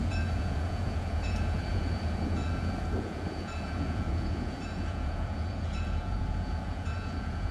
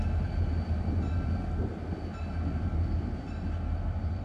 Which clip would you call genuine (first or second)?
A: second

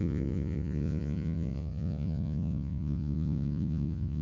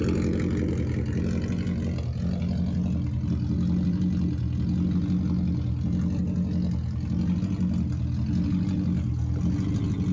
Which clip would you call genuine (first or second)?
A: second